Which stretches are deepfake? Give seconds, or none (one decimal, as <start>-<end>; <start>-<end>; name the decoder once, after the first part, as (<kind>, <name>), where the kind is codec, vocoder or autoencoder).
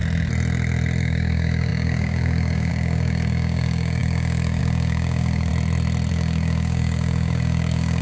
1.0-5.5 (codec, DAC); 6.1-8.0